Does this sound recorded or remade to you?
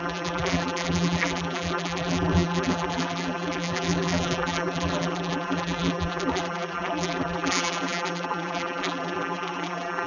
remade